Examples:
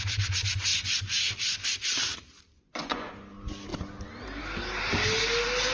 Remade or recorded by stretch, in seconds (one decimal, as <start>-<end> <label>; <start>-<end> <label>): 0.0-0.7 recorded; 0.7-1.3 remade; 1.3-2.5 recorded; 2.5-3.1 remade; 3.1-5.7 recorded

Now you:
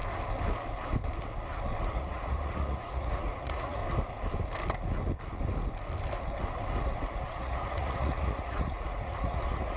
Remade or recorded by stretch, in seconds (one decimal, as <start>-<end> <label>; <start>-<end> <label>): 0.0-1.9 recorded; 1.9-3.8 remade; 3.8-7.2 recorded; 7.2-9.8 remade

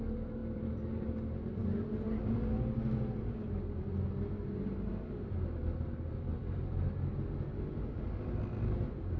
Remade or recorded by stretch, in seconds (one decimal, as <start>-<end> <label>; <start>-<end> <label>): 0.0-0.4 recorded; 0.4-1.1 remade; 1.1-6.3 recorded; 6.3-6.9 remade; 6.9-9.2 recorded

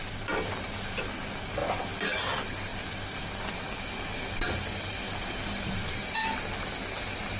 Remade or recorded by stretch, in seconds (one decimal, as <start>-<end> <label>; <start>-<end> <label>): 0.0-7.4 recorded

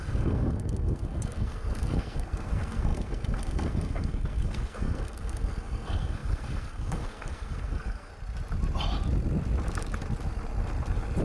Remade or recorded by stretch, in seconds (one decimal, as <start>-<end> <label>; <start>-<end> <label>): 0.0-8.1 remade; 8.1-11.2 recorded

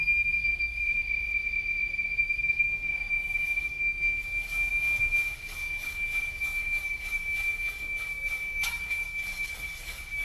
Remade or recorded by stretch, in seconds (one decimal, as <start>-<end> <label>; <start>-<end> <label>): 0.0-1.0 remade; 1.0-2.2 recorded; 2.2-10.2 remade

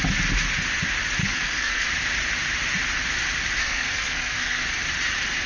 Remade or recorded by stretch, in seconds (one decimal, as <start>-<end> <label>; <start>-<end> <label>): 0.0-1.2 recorded; 1.2-1.9 remade; 1.9-3.6 recorded; 3.6-4.6 remade; 4.6-5.5 recorded

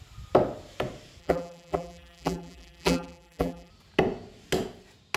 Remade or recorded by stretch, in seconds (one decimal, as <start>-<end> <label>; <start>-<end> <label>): 0.0-1.2 recorded; 1.2-3.7 remade; 3.7-5.2 recorded